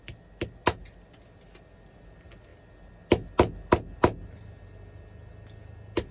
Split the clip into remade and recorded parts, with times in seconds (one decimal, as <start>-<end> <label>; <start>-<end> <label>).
0.0-6.1 recorded